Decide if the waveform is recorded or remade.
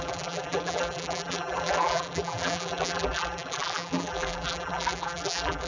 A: remade